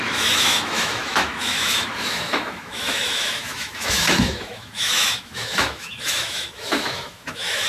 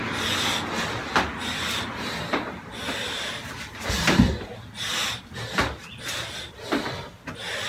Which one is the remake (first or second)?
first